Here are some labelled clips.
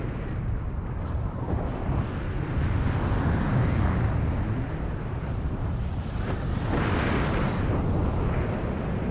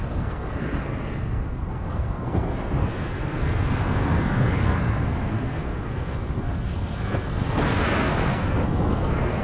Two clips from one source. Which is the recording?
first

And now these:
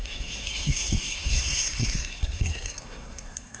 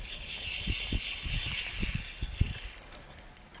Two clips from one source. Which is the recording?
second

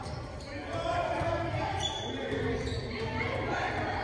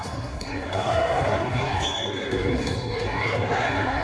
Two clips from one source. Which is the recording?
first